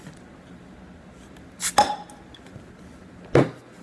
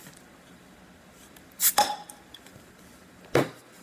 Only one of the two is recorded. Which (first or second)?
first